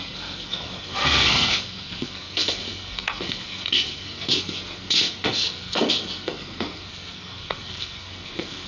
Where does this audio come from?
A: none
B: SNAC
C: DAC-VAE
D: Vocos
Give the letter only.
B